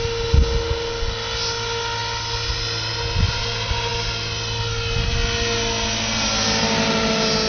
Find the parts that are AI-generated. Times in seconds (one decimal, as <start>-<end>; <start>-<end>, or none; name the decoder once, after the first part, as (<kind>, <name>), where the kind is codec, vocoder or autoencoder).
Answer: none